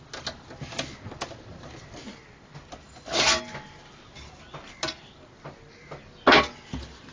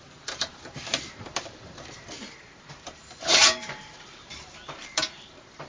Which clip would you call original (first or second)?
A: first